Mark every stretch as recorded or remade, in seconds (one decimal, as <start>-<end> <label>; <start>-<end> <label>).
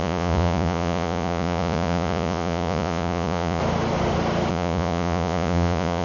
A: 0.0-3.6 remade; 3.6-4.5 recorded; 4.5-6.0 remade